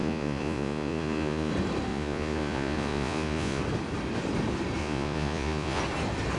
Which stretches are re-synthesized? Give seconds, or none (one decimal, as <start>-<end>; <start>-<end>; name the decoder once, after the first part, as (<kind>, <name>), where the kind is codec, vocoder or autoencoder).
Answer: 0.0-1.5 (vocoder, Vocos); 1.9-3.6; 4.8-5.8